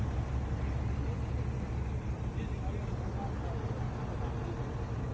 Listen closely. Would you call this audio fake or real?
real